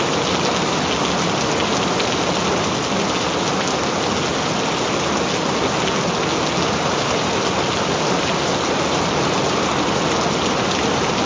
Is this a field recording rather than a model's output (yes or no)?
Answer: yes